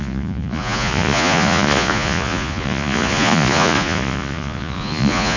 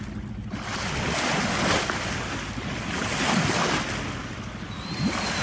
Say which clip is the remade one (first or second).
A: first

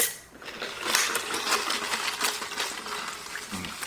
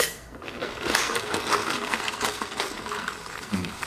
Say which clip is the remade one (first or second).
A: second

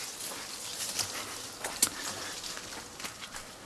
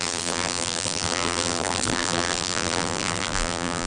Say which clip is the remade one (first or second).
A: second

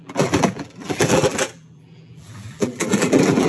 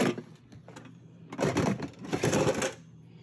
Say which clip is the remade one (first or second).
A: first